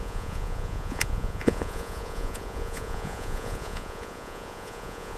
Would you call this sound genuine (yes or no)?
no